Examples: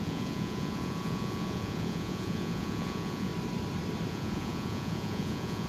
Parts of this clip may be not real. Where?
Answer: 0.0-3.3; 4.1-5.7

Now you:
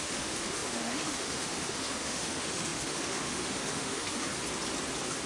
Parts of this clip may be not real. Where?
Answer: 0.0-4.3

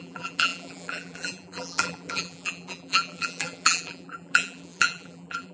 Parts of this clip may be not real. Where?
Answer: 0.0-5.5

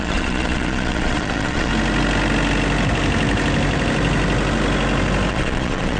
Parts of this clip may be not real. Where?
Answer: 0.0-1.7; 5.3-6.0